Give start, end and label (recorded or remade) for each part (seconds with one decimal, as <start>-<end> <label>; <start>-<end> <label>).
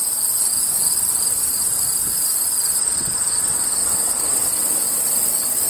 0.0-5.7 recorded